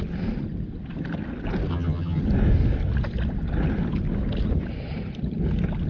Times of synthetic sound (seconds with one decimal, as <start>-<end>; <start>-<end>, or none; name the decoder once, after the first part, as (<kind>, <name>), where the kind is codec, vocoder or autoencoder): 1.7-2.2 (vocoder, HiFi-GAN)